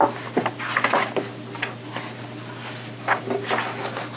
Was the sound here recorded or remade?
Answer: recorded